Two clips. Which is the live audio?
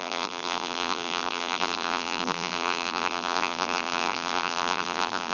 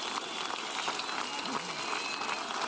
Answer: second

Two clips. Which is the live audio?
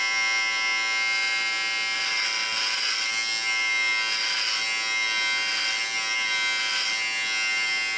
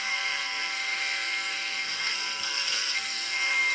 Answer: first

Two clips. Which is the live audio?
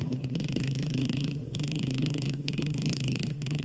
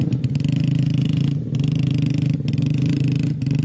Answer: second